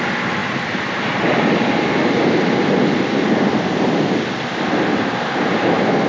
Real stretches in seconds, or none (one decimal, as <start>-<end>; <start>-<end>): 0.0-6.1